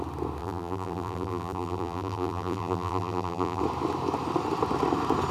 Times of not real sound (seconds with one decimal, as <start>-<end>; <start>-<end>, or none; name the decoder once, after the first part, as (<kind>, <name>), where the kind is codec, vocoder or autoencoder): 0.4-3.6 (vocoder, BigVGAN v2)